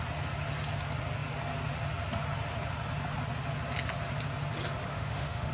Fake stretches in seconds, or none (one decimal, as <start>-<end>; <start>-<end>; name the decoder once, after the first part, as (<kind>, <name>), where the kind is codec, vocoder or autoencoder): 4.9-5.5 (autoencoder, DAC-VAE)